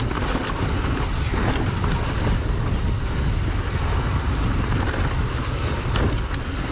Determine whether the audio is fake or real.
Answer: real